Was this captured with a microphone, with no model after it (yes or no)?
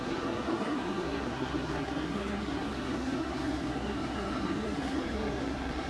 no